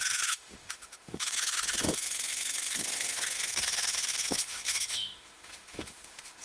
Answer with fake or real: fake